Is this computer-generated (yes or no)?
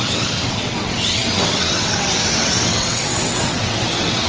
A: yes